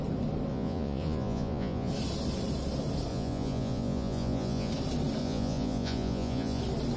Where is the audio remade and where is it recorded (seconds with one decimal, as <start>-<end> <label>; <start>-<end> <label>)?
0.0-0.5 recorded; 0.5-1.9 remade; 1.9-3.1 recorded; 3.1-4.7 remade; 4.7-5.2 recorded; 5.2-6.6 remade; 6.6-7.0 recorded